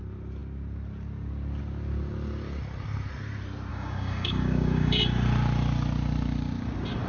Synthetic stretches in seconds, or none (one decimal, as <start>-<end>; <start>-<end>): 3.7-5.0